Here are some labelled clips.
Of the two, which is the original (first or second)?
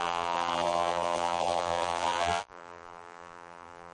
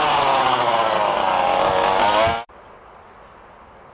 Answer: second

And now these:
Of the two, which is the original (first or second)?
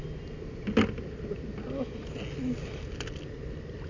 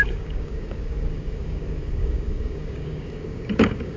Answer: first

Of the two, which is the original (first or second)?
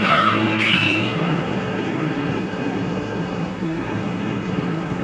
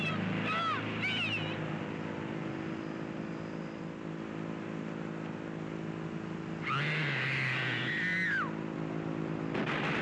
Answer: second